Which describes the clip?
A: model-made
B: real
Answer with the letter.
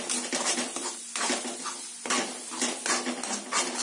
B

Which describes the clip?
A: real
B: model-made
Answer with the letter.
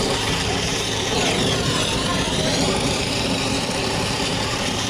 B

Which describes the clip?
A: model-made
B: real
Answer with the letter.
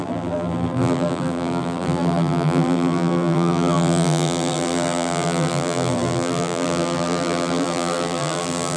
A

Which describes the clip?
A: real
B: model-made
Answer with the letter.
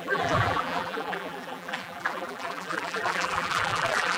B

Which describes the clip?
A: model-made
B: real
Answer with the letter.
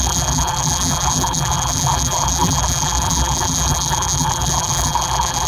A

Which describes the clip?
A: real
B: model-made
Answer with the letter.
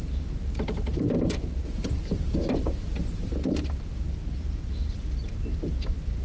B